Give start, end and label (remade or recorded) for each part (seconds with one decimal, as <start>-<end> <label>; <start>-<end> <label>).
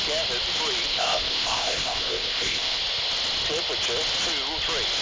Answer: 0.0-0.9 recorded; 0.9-2.8 remade; 2.8-5.0 recorded